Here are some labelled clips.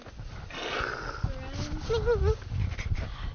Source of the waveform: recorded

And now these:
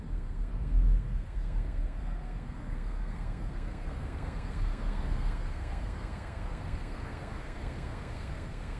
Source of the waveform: remade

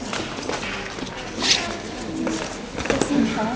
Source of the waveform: recorded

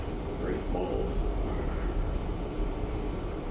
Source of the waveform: recorded